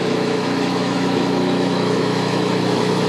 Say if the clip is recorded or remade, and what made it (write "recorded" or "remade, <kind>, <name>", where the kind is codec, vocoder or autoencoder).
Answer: remade, autoencoder, DAC-VAE